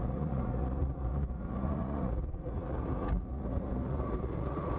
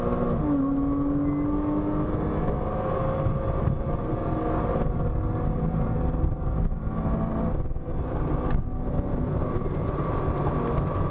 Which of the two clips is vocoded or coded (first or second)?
first